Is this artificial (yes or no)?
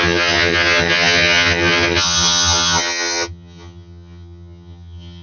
yes